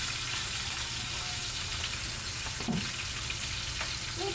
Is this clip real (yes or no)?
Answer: yes